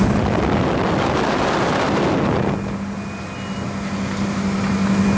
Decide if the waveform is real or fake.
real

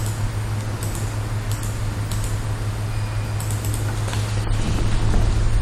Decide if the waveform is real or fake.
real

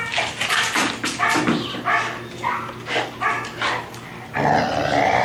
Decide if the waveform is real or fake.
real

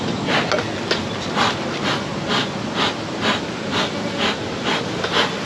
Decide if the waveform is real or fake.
real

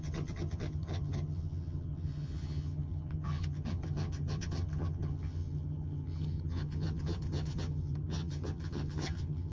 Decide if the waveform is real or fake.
fake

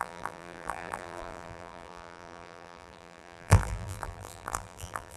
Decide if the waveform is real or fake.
fake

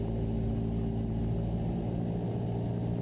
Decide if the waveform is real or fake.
real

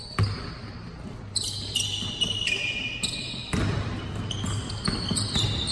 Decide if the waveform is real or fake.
real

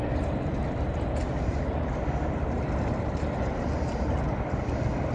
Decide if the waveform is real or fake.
real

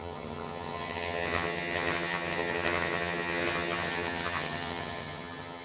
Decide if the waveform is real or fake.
fake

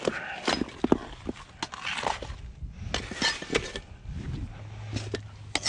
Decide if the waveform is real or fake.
real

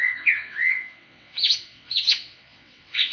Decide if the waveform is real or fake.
fake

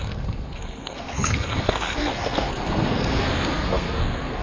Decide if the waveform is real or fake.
fake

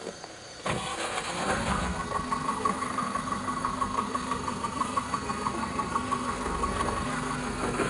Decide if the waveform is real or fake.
fake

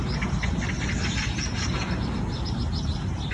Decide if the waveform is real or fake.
real